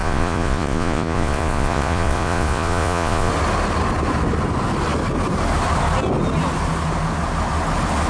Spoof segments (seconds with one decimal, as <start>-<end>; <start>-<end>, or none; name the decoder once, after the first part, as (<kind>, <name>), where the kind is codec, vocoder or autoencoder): 0.0-3.3 (vocoder, Vocos)